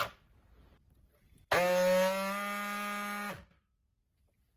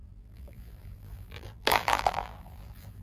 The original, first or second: first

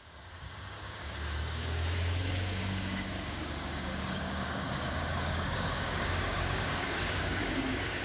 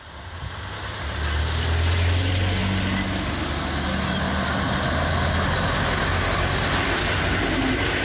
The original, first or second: second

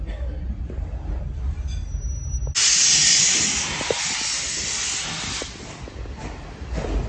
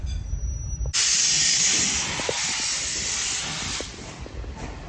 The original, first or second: first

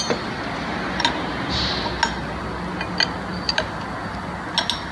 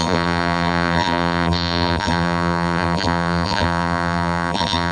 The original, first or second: first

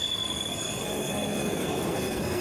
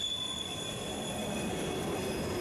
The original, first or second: second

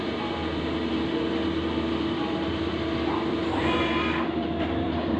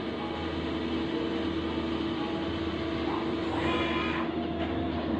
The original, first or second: second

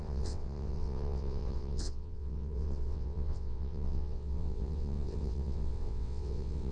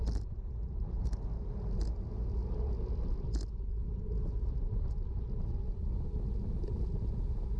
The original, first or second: second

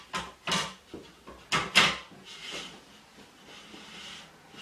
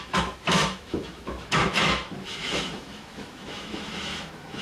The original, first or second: first